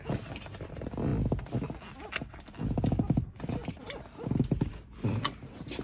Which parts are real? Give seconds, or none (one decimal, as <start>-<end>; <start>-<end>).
1.1-2.6; 3.6-4.7